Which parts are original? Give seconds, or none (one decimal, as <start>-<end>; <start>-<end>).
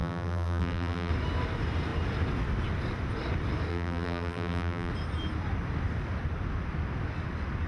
1.1-3.7; 4.9-7.7